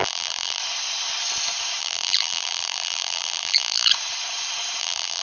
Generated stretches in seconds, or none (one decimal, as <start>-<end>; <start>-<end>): 0.0-0.6; 1.8-3.9; 4.8-5.2